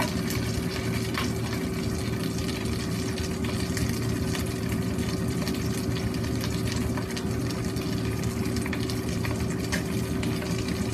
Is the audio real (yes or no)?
yes